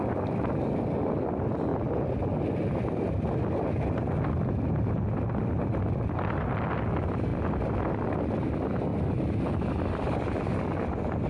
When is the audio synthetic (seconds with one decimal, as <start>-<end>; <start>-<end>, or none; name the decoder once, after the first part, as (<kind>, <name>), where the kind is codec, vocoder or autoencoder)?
none